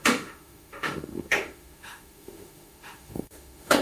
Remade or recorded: remade